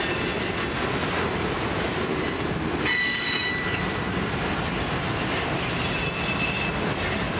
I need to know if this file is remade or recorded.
recorded